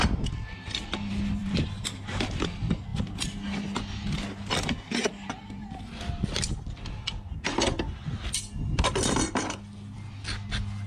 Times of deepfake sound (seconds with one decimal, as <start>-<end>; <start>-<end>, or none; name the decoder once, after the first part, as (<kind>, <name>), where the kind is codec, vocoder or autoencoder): 1.4-2.2 (vocoder, BigVGAN v2); 5.0-6.0